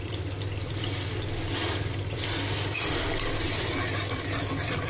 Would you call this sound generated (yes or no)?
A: yes